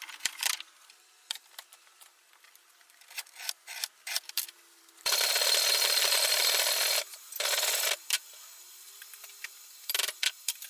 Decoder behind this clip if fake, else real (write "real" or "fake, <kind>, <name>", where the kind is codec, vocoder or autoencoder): real